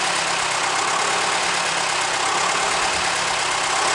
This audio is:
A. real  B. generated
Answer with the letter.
A